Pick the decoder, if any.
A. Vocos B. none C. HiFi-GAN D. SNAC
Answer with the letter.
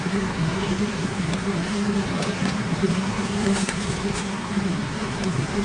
D